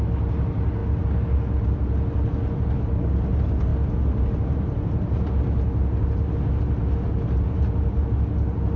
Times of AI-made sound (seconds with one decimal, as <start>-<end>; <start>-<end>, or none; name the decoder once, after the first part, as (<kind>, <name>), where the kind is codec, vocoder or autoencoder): none